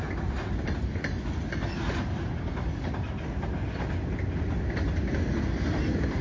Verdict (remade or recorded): recorded